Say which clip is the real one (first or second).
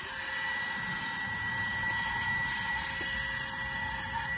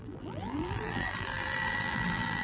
first